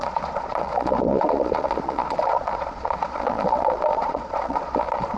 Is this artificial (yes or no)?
yes